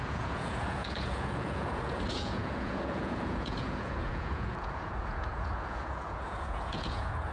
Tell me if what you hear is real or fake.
fake